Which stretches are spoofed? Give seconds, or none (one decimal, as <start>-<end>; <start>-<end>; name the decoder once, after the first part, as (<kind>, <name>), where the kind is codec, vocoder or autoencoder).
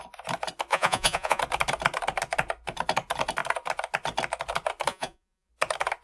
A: 0.7-1.4 (vocoder, Vocos); 4.9-5.5